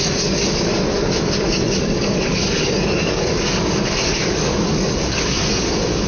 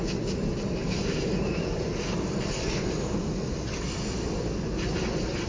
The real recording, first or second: second